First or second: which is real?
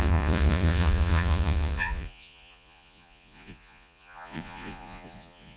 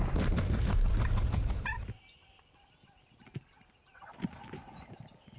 second